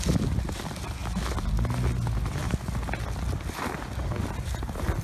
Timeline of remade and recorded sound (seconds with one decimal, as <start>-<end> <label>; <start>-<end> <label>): 0.0-5.0 recorded